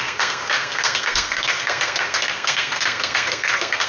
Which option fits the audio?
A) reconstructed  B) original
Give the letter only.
A